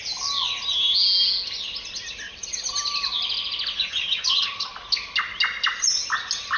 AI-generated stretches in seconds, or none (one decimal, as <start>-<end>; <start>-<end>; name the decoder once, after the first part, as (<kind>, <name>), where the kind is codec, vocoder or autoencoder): 3.9-4.7 (vocoder, HiFi-GAN)